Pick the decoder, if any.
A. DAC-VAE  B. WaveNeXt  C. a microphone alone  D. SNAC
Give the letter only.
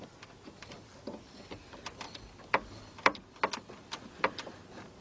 C